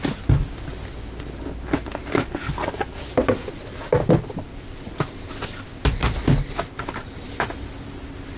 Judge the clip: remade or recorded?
recorded